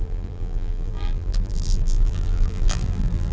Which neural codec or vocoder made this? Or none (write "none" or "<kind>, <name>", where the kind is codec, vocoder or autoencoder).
vocoder, BigVGAN v2